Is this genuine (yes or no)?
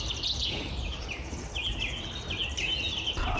yes